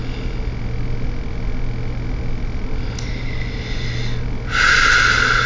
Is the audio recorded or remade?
recorded